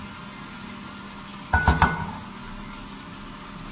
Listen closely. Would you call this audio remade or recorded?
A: recorded